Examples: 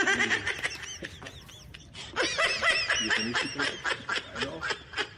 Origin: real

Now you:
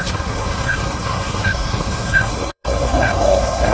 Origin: fake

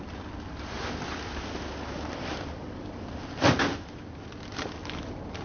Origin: real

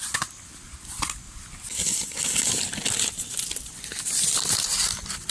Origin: real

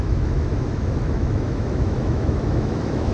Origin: fake